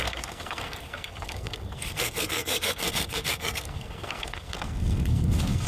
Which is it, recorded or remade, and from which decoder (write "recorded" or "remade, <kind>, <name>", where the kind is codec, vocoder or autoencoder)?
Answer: remade, codec, SNAC